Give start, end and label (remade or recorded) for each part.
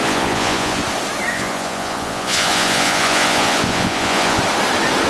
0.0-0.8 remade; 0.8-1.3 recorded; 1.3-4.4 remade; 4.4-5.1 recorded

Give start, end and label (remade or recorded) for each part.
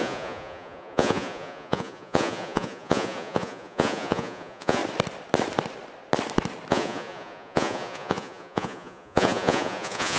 0.0-4.8 remade; 4.8-6.7 recorded; 6.7-10.2 remade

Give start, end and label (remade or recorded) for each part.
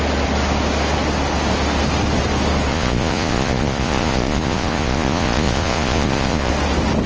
0.0-2.7 recorded; 2.7-6.5 remade; 6.5-7.1 recorded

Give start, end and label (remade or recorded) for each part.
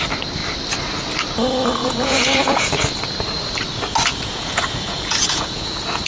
0.0-1.8 recorded; 1.8-2.7 remade; 2.7-4.1 recorded; 4.1-6.1 remade